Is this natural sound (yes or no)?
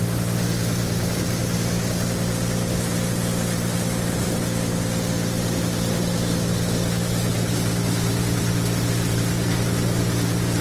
yes